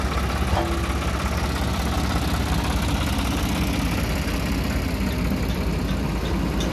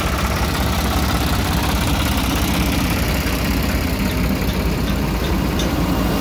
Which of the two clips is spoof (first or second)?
second